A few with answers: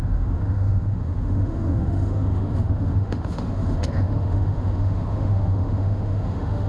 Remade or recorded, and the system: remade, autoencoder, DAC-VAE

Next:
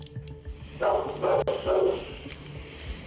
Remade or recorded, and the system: recorded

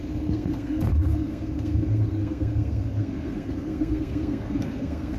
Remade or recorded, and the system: remade, codec, SNAC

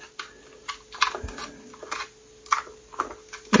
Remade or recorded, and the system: recorded